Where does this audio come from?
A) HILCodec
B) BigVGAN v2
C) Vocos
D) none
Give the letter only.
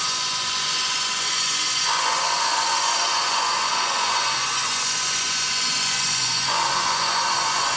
C